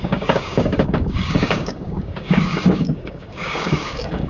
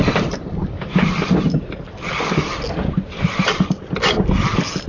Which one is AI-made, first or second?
first